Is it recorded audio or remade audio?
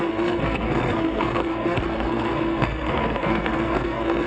remade